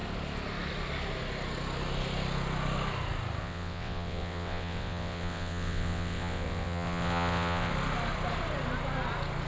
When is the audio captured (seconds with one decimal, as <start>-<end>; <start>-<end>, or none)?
0.0-3.4; 7.7-9.5